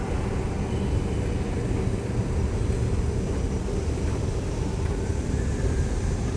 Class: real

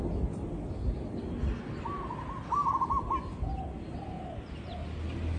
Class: real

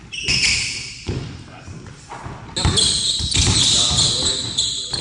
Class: real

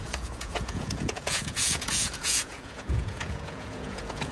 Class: fake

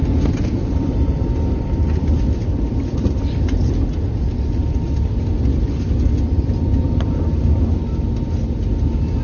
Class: real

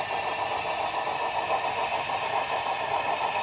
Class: real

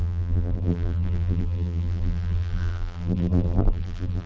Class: fake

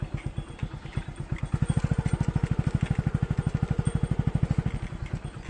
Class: real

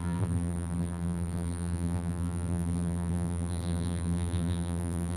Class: fake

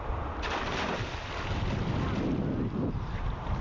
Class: real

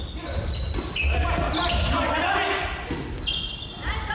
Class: real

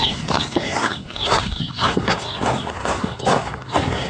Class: fake